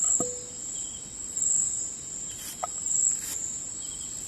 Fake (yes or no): no